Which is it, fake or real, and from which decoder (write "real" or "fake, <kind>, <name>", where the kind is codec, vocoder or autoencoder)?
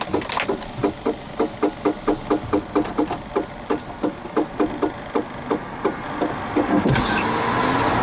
real